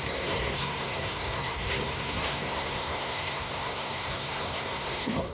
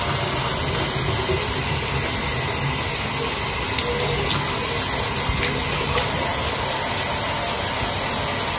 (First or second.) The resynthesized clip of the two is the first